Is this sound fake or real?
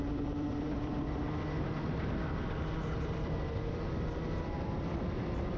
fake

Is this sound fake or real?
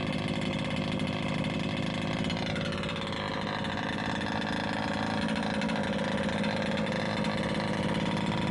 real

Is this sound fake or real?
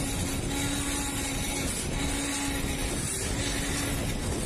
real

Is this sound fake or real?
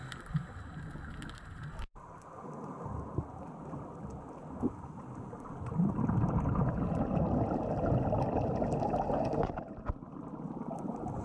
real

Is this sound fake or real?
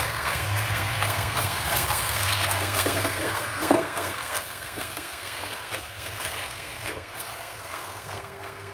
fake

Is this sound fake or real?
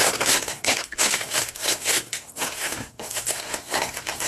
fake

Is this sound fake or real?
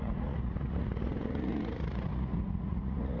fake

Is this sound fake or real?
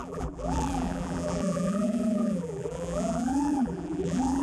fake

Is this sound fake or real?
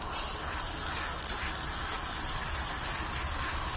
real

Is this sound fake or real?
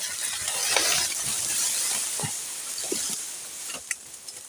real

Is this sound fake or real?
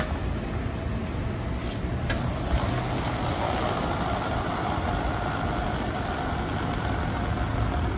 real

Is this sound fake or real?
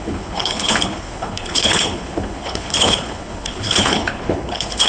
fake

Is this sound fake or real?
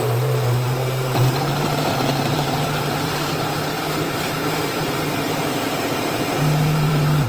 fake